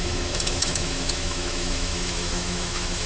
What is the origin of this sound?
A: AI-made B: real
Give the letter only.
A